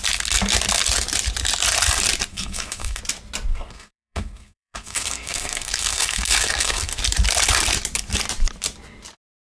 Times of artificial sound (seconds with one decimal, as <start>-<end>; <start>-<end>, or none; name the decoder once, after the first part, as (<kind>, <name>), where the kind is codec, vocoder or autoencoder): 2.3-3.0 (codec, SNAC); 3.5-7.0